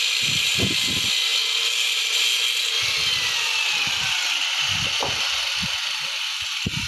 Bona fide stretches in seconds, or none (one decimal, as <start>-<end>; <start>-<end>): 0.0-6.9